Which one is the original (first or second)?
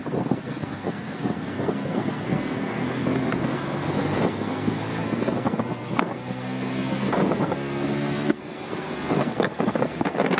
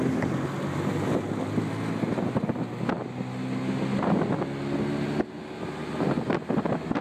second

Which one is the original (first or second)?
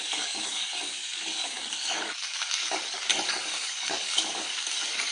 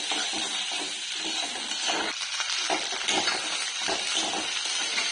second